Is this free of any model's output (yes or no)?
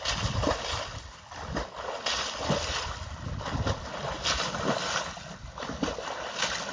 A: yes